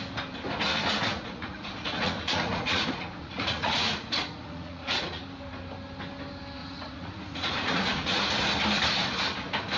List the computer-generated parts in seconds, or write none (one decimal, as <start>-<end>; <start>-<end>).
1.1-5.2; 6.6-8.2